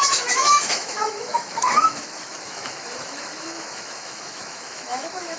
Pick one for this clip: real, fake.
fake